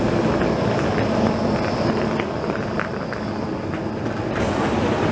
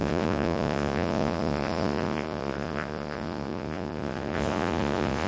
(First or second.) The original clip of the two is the first